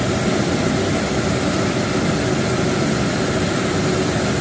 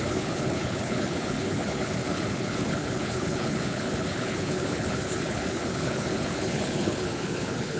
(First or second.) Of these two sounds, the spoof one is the second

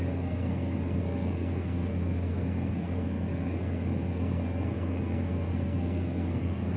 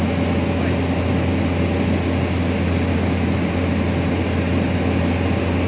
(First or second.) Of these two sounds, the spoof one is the first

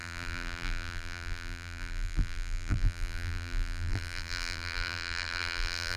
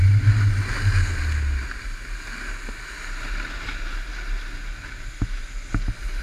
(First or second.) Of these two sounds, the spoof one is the first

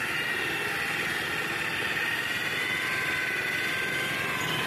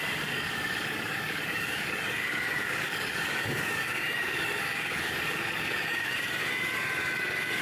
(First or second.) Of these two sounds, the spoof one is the second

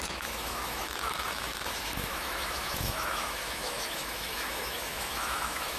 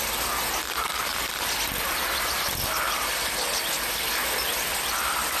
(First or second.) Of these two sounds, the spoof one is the first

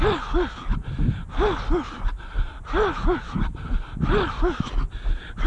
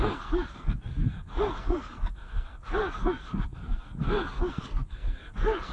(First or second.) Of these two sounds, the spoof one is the second